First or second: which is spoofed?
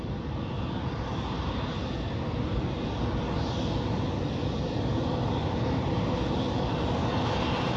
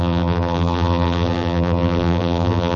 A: second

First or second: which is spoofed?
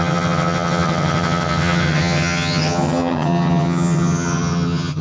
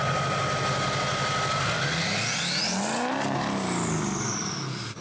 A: first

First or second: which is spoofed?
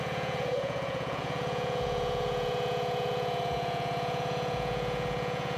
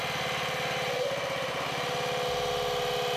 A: first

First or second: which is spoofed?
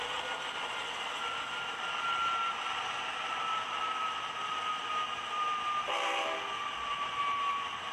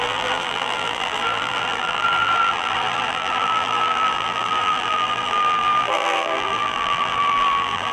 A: second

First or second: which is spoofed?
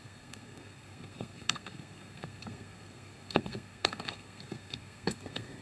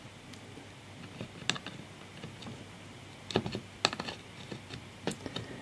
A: first